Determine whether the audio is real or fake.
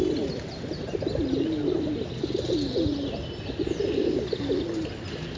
real